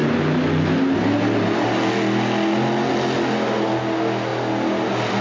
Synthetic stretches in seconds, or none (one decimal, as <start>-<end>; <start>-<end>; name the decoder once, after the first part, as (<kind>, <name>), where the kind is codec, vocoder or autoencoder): none

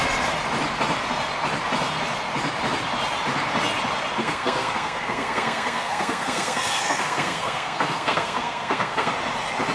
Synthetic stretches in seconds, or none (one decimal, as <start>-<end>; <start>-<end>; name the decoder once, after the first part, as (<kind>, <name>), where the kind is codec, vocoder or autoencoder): 4.2-9.1 (codec, SNAC)

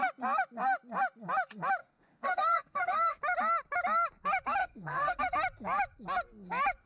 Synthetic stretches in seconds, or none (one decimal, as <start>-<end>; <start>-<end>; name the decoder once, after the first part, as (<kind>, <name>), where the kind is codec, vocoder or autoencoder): 1.8-3.2 (codec, SNAC); 4.6-5.2

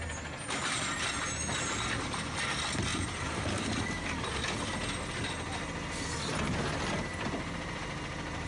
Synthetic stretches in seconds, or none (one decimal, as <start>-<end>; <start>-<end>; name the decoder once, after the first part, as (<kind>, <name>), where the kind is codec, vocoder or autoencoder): 2.9-3.7 (vocoder, BigVGAN v2)